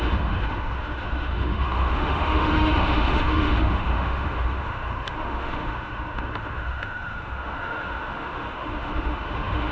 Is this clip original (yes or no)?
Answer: no